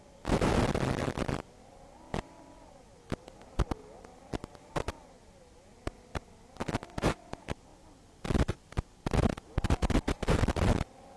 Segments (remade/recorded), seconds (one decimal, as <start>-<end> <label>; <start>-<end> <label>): 0.0-11.2 recorded

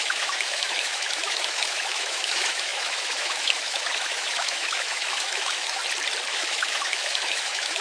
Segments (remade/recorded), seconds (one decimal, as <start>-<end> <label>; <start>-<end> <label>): 0.0-5.8 remade; 5.8-6.3 recorded; 6.3-7.8 remade